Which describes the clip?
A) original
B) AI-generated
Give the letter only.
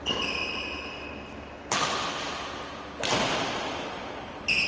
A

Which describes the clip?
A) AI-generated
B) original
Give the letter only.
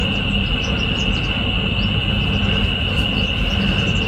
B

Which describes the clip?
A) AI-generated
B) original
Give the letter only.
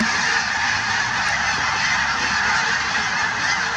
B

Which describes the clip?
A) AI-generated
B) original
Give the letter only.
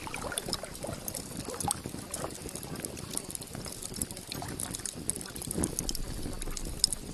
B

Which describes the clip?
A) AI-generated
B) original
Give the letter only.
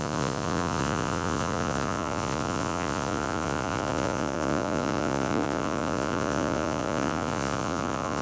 A